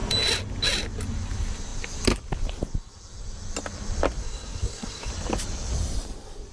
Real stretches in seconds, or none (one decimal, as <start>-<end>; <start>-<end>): 0.0-4.2; 5.1-6.5